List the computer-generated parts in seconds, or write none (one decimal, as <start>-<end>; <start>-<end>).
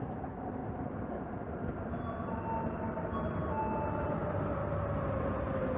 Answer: 0.0-0.6; 4.1-4.6